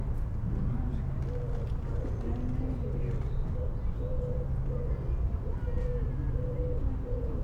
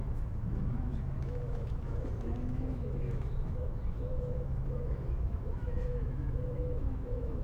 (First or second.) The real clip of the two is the first